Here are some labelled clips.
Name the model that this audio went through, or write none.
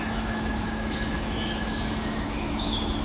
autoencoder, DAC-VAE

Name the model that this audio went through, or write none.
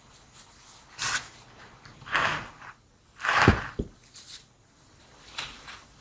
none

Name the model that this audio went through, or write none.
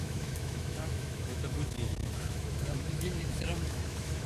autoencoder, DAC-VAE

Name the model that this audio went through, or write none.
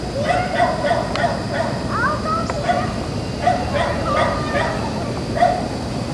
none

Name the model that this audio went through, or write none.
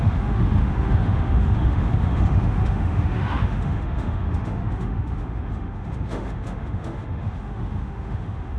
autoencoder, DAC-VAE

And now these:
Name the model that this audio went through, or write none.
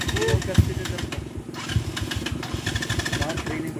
none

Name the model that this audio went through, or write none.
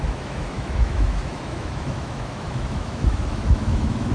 autoencoder, DAC-VAE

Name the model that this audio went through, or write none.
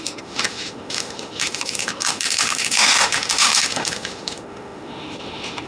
autoencoder, DAC-VAE